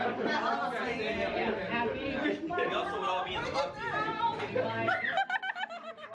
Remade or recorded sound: recorded